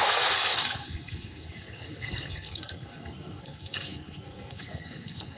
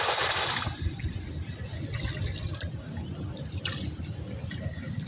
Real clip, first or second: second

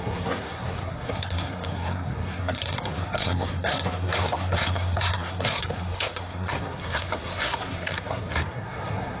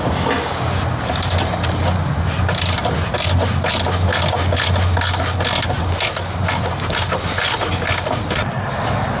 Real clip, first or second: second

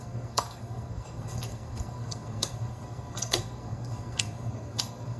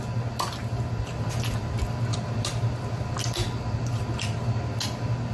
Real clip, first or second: second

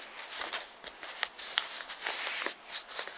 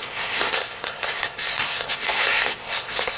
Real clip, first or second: first